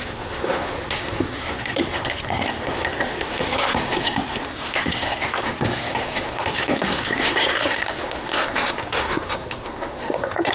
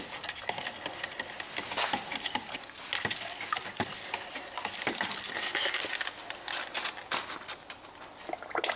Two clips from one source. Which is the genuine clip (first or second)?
second